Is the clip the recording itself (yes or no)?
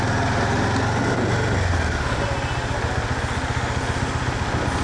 yes